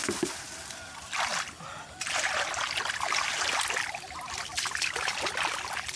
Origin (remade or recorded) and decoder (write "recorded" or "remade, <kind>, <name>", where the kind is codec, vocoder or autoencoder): recorded